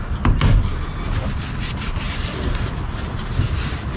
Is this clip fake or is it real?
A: real